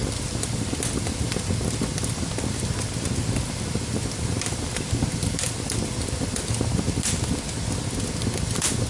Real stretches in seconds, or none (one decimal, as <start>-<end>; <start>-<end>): 0.0-8.9